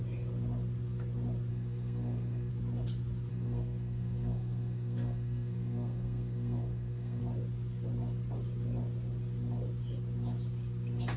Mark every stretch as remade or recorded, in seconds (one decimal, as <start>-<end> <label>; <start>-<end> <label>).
0.0-1.5 recorded; 1.5-2.5 remade; 2.5-3.3 recorded; 3.3-7.2 remade; 7.2-11.2 recorded